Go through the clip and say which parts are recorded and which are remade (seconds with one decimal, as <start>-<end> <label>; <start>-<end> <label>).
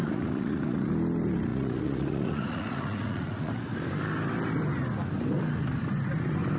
0.0-0.9 remade; 0.9-1.5 recorded; 1.5-3.5 remade; 3.5-6.6 recorded